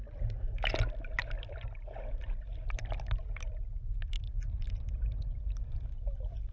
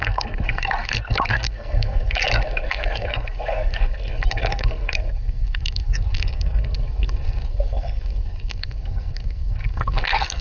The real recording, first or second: first